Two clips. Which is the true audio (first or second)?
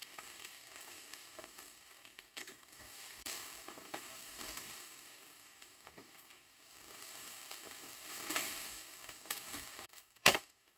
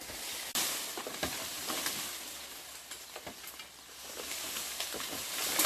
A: second